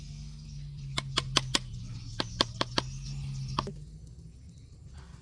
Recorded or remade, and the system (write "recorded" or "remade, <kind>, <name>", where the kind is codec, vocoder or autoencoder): recorded